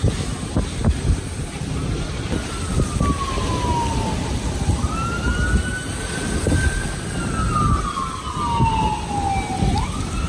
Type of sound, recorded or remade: recorded